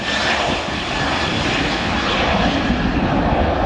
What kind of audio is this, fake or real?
real